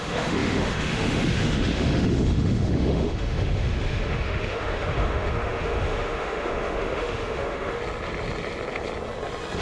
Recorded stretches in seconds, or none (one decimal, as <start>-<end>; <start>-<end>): 7.8-9.6